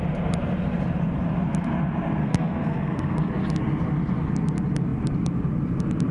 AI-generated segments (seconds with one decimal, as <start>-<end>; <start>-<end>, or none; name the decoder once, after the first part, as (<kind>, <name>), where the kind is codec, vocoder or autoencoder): 2.2-3.3 (codec, SNAC)